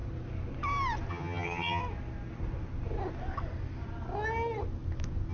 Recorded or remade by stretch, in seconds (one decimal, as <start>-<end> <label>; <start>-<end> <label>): 0.0-1.1 recorded; 1.1-1.8 remade; 1.8-5.3 recorded

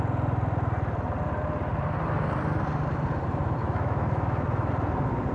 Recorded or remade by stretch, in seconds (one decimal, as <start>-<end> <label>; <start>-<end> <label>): 0.0-3.6 recorded; 3.6-4.7 remade; 4.7-5.3 recorded

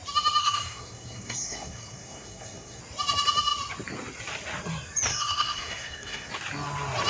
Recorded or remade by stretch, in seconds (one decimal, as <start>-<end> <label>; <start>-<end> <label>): 0.0-0.4 recorded; 0.4-2.8 remade; 2.8-5.1 recorded; 5.1-6.3 remade; 6.3-7.1 recorded